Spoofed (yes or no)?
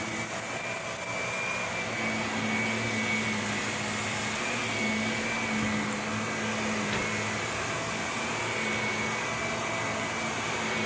no